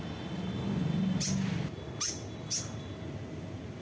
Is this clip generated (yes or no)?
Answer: no